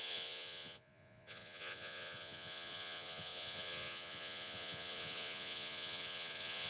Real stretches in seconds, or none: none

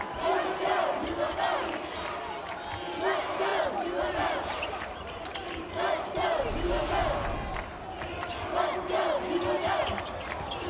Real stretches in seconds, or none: 0.0-3.5; 5.7-10.7